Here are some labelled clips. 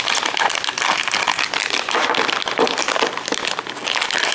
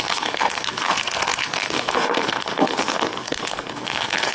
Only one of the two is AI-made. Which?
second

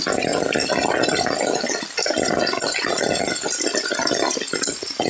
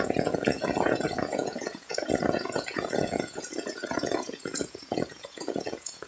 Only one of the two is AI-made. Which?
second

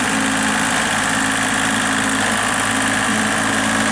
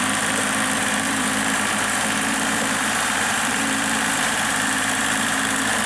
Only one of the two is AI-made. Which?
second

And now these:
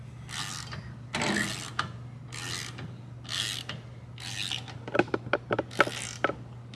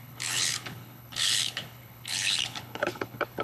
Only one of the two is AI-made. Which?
second